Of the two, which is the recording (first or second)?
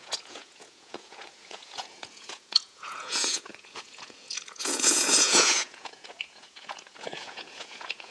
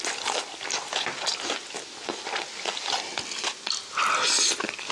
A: second